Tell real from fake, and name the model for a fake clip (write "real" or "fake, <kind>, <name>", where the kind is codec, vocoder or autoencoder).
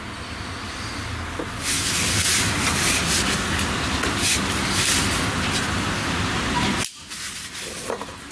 real